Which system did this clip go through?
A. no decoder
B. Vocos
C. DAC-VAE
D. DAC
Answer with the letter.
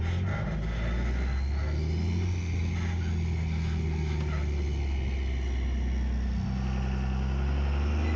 A